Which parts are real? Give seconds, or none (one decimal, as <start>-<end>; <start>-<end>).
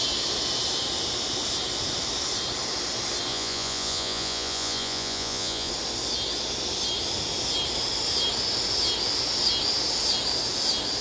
0.0-3.3; 5.7-11.0